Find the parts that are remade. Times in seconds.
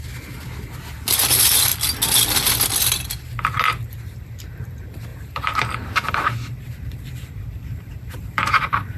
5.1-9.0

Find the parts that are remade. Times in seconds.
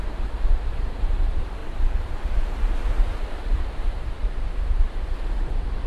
0.0-4.2; 5.4-5.9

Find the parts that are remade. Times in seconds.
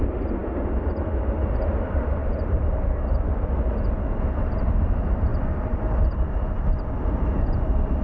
2.2-3.3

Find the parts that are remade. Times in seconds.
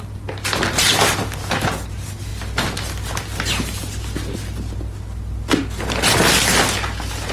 none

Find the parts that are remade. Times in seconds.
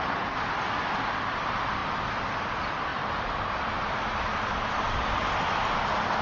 1.8-2.4; 2.9-3.9